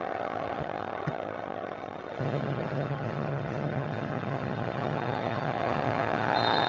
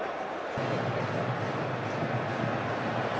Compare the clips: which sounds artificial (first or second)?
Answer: first